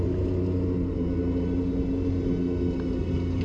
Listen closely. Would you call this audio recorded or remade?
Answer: recorded